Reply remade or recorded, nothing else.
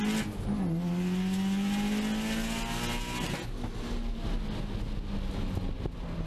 recorded